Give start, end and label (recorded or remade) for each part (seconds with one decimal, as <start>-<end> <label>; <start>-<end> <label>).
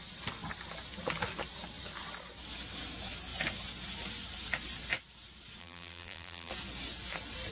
0.0-5.6 recorded; 5.6-6.5 remade; 6.5-7.5 recorded